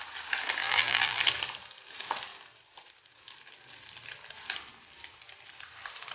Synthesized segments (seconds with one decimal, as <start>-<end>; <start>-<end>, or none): 0.6-1.2